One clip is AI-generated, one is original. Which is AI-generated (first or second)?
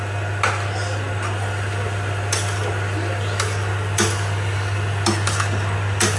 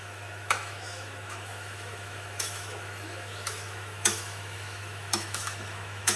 second